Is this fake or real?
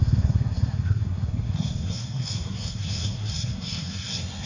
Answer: fake